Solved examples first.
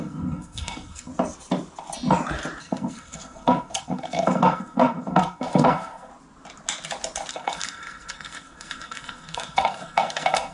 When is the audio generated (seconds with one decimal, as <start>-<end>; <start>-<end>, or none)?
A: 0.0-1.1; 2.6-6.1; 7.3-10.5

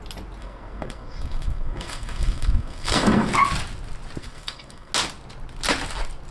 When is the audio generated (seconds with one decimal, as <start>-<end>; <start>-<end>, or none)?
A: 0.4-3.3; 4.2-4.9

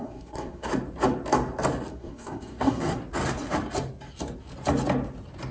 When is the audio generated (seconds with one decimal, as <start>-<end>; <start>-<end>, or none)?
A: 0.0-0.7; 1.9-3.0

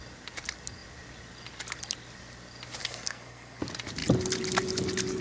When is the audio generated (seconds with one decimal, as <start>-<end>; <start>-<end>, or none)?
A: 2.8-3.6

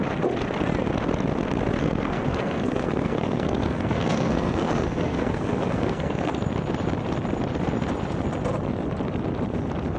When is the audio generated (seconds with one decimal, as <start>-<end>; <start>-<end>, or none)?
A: 1.8-6.4